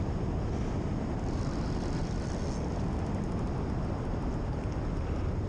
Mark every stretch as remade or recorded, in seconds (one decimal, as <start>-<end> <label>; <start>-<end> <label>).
0.0-5.5 recorded